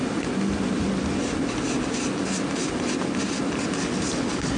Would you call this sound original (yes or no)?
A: yes